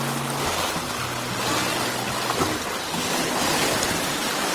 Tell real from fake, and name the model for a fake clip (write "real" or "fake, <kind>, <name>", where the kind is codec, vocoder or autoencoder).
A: real